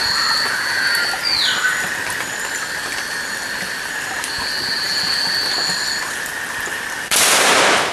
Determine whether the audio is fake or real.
real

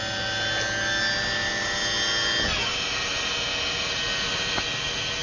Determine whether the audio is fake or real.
real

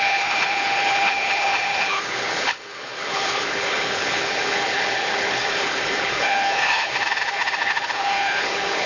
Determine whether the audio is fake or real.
fake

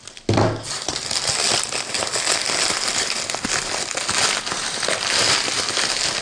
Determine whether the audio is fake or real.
real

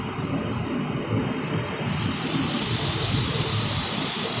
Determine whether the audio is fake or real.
real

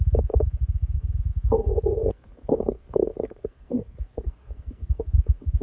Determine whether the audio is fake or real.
fake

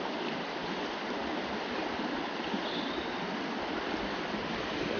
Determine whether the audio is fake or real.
real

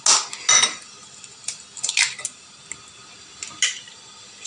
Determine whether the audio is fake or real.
real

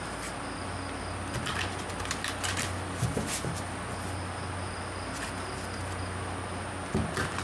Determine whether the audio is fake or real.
real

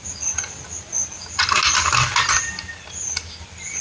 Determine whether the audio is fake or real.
real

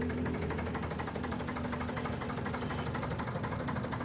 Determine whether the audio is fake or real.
real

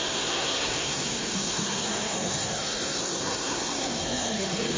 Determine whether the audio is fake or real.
fake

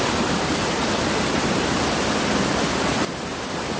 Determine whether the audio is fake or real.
real